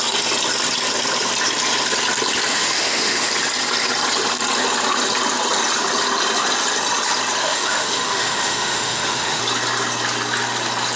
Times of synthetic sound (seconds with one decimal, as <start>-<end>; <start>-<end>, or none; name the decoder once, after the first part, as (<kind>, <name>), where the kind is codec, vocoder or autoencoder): 2.5-3.3 (autoencoder, DAC-VAE); 7.4-9.4